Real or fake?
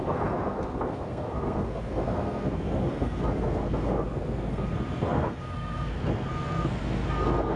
fake